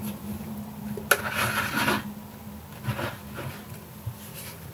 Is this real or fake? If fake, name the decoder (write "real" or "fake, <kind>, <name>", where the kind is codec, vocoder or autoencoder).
real